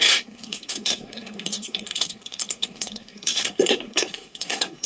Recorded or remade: remade